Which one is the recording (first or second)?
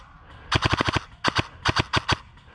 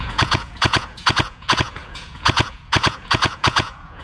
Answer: first